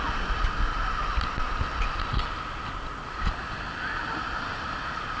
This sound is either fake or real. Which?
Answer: real